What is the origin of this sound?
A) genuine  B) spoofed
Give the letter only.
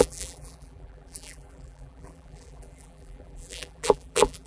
B